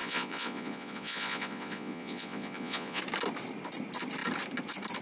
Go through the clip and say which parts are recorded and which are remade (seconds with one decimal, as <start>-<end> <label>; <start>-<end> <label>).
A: 0.0-3.0 remade; 3.0-5.0 recorded